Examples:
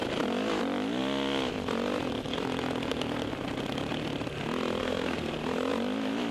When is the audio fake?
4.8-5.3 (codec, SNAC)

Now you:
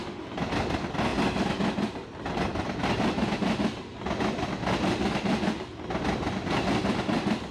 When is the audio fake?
none

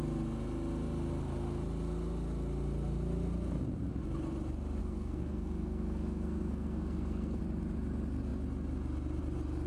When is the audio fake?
4.8-7.4 (codec, SNAC)

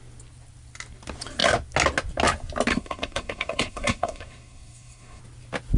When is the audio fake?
2.7-5.2 (codec, SNAC)

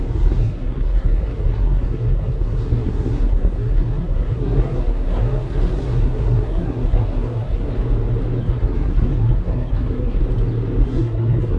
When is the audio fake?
0.0-7.7 (codec, SNAC); 8.4-10.2; 10.8-11.6

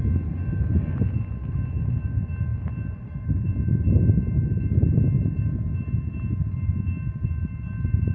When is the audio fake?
none

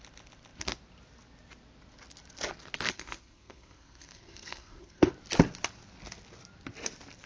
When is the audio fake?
2.9-5.1 (codec, SNAC)